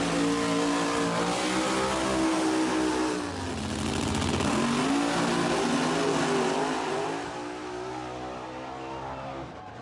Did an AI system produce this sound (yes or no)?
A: no